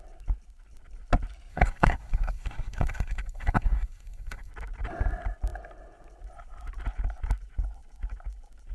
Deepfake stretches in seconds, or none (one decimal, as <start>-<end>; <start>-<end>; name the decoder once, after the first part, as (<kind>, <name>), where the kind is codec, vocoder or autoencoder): 1.5-4.5 (codec, SNAC)